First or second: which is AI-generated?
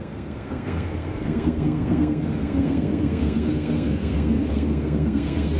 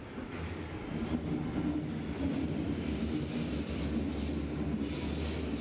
first